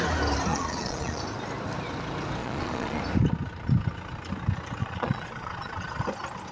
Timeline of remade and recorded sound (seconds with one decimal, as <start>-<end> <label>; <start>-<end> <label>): 0.0-0.5 recorded; 0.5-1.2 remade; 1.2-2.4 recorded; 2.4-3.0 remade; 3.0-4.8 recorded; 4.8-6.0 remade; 6.0-6.5 recorded